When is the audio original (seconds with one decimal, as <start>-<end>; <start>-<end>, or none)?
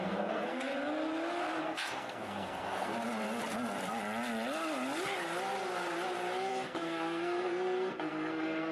0.7-1.6; 2.9-6.5